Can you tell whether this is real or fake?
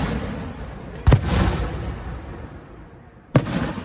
real